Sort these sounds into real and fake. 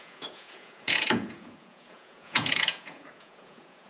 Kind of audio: fake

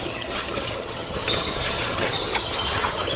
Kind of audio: fake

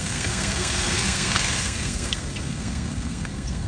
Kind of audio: fake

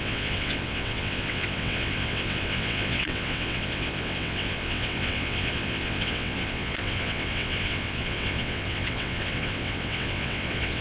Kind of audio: fake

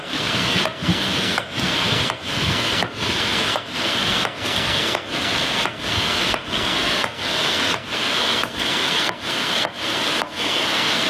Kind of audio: fake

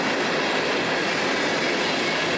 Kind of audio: real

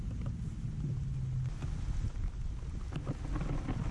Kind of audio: real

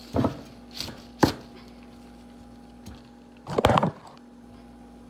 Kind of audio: real